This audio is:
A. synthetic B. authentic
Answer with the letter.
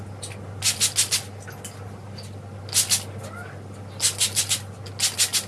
B